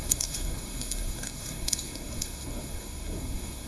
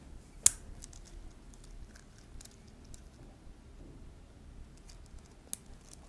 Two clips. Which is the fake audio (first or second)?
first